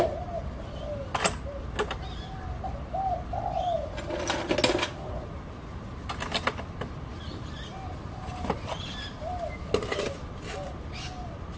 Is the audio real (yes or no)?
yes